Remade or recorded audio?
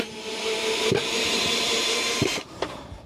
remade